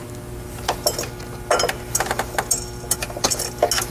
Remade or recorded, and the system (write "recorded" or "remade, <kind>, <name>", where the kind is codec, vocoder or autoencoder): recorded